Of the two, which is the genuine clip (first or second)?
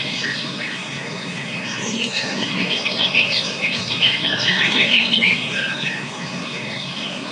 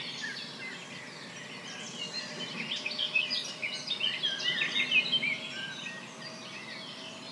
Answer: second